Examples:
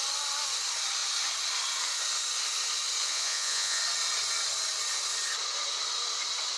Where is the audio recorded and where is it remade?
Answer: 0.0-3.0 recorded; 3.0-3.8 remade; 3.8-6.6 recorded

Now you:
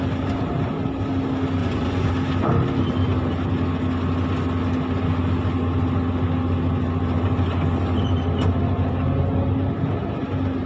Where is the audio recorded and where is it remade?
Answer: 0.0-1.6 recorded; 1.6-2.1 remade; 2.1-10.7 recorded

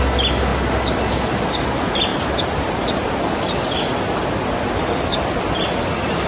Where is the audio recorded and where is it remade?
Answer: 0.0-6.3 recorded

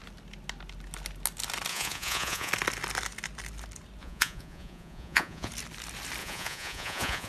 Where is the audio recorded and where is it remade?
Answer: 0.0-1.7 recorded; 1.7-2.5 remade; 2.5-4.0 recorded; 4.0-5.5 remade; 5.5-6.2 recorded; 6.2-7.3 remade

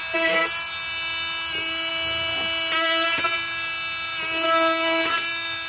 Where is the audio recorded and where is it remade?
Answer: 0.0-5.7 recorded

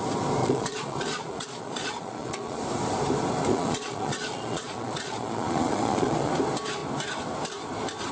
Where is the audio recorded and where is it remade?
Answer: 0.0-0.4 recorded; 0.4-2.6 remade; 2.6-3.5 recorded; 3.5-6.3 remade; 6.3-8.1 recorded

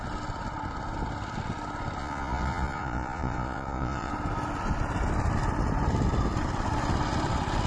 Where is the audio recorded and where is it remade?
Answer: 0.0-2.0 recorded; 2.0-4.1 remade; 4.1-7.7 recorded